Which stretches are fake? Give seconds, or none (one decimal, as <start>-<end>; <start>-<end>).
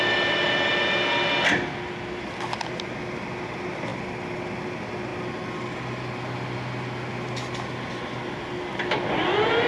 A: none